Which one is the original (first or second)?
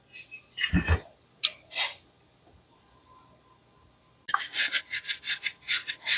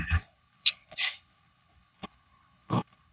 first